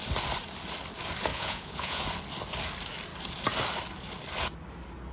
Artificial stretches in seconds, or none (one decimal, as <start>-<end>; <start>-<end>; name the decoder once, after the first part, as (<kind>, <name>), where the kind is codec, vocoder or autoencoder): 1.3-2.0 (vocoder, Vocos)